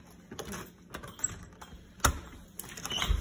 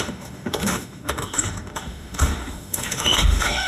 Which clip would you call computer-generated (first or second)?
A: second